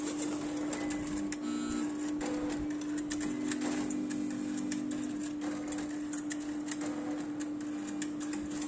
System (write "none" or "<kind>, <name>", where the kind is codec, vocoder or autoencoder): none